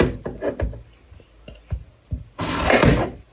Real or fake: real